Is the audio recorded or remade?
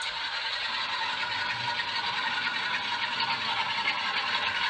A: recorded